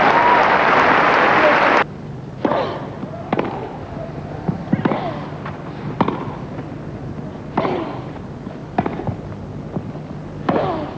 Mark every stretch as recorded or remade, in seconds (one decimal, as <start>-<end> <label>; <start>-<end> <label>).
0.0-11.0 recorded